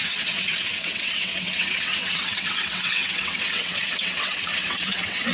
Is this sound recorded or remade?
remade